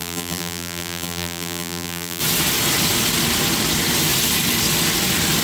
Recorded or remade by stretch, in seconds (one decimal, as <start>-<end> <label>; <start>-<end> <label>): 0.0-2.2 remade; 2.2-5.4 recorded